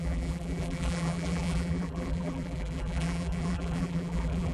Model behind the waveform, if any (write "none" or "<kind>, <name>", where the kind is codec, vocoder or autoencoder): vocoder, BigVGAN v2